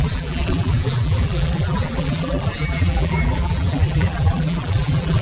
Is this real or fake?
fake